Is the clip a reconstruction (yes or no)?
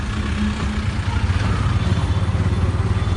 no